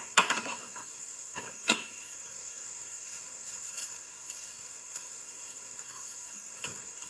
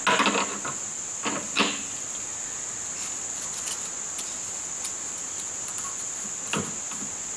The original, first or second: second